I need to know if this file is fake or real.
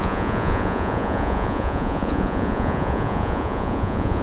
fake